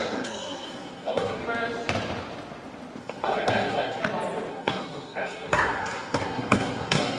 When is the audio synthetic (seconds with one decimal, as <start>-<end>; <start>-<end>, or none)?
0.0-1.4; 3.0-4.0; 4.5-7.2